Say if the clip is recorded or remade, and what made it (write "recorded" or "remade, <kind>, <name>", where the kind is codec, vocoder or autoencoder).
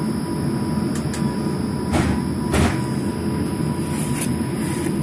recorded